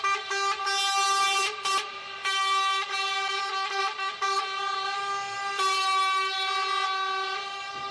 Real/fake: real